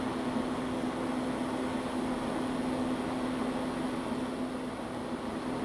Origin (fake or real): real